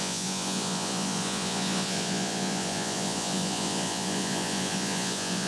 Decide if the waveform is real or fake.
fake